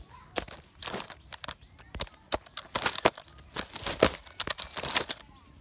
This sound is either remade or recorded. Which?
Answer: recorded